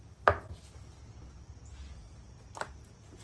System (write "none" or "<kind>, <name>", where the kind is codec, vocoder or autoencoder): none